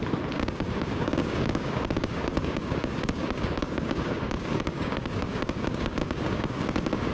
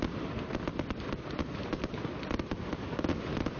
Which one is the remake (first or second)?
first